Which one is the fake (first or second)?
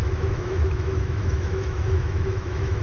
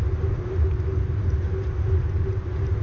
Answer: first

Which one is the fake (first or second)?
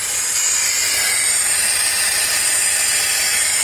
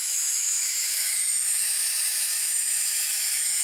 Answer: second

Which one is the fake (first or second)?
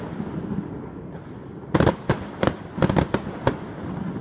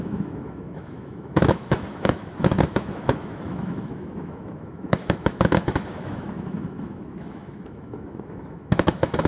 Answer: second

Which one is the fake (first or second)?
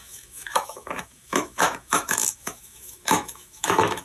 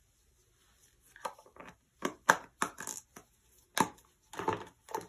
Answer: first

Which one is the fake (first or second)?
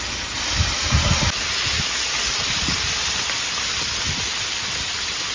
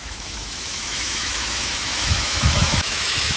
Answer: second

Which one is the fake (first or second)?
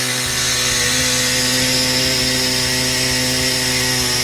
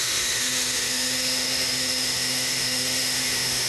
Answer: second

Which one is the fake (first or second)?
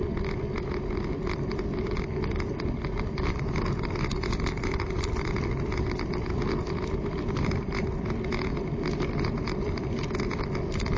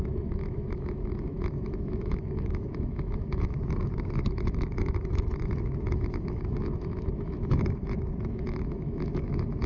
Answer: second